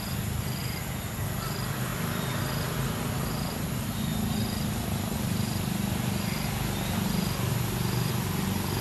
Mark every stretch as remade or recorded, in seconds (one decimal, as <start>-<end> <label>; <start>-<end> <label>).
0.0-8.8 recorded